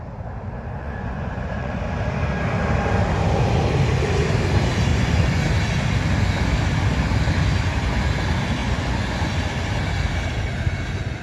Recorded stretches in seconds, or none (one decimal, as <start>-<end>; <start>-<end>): 0.0-0.8; 1.8-4.9; 5.4-8.6; 9.3-11.2